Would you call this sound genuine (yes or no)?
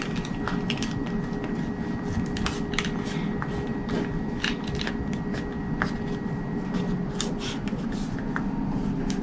yes